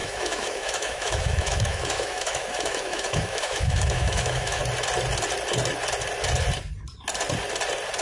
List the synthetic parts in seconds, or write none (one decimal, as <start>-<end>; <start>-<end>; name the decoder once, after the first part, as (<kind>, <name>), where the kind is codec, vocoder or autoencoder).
0.0-4.6 (autoencoder, DAC-VAE)